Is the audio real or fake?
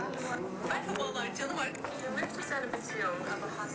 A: real